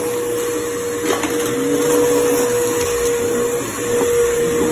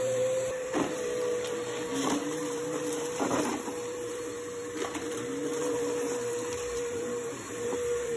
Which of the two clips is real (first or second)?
first